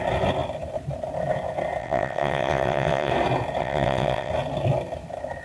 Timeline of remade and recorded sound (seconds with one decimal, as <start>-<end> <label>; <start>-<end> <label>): 0.0-1.8 recorded; 1.8-3.1 remade; 3.1-3.6 recorded; 3.6-4.3 remade; 4.3-5.4 recorded